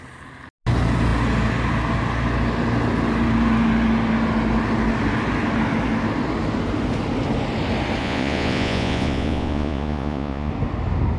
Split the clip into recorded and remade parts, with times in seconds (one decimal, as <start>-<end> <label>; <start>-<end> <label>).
0.0-8.0 recorded; 8.0-10.5 remade; 10.5-11.2 recorded